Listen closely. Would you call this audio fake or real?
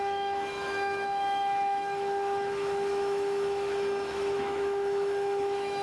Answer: fake